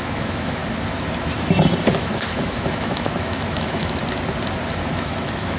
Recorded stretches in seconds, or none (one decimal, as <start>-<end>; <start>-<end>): 0.6-1.9; 4.0-4.9